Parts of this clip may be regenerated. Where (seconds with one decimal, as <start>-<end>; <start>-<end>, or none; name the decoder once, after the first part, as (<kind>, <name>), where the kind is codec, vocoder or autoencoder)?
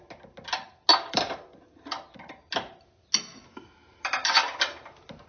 0.9-2.0 (vocoder, BigVGAN v2)